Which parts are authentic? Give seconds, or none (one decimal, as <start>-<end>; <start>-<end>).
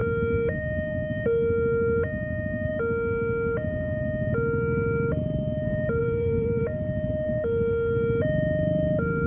0.0-6.0; 6.6-9.3